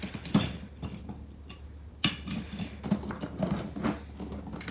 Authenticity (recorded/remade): recorded